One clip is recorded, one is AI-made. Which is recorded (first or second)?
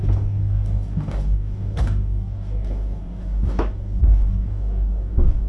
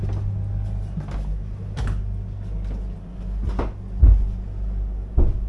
second